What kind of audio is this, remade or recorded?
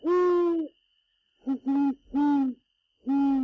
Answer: recorded